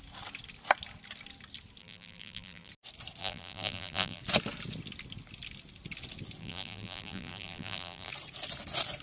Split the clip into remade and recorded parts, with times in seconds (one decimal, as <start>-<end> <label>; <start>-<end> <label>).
0.0-1.8 recorded; 1.8-2.7 remade; 2.7-3.2 recorded; 3.2-4.2 remade; 4.2-6.4 recorded; 6.4-8.1 remade; 8.1-9.0 recorded